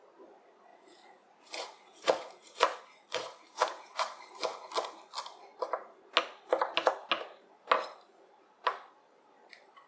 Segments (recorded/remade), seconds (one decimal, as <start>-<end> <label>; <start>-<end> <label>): 0.0-0.7 recorded; 0.7-4.7 remade; 4.7-9.9 recorded

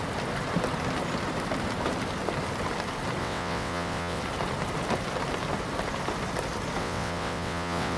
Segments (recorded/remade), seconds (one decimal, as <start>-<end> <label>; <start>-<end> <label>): 0.0-3.2 recorded; 3.2-4.2 remade; 4.2-6.8 recorded; 6.8-8.0 remade

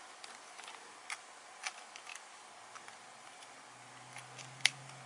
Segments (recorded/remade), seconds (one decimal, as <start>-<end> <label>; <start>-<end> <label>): 0.0-5.1 recorded

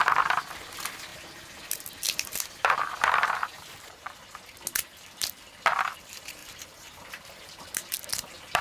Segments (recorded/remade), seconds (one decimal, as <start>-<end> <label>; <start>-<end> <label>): 0.0-3.4 recorded; 3.4-4.0 remade; 4.0-6.4 recorded; 6.4-7.5 remade; 7.5-8.6 recorded

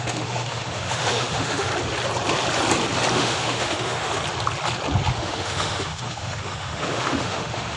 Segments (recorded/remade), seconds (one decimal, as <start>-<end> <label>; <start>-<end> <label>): 0.0-1.7 remade; 1.7-3.1 recorded; 3.1-4.1 remade; 4.1-5.1 recorded; 5.1-7.8 remade